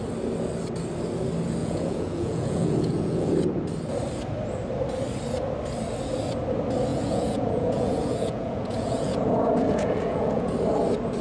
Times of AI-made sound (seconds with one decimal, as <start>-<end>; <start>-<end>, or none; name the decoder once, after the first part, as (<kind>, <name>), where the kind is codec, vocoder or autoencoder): 1.6-3.3 (vocoder, Vocos); 6.9-10.5